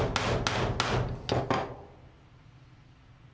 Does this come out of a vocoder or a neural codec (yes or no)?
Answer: no